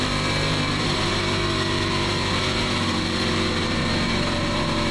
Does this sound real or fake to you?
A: fake